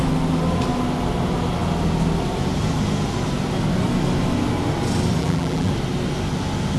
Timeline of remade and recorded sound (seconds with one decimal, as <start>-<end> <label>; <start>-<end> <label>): 0.0-5.2 recorded; 5.2-5.7 remade; 5.7-6.8 recorded